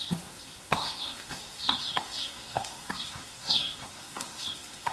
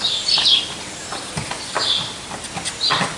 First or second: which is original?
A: second